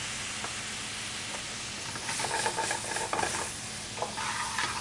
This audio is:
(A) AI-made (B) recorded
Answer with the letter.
B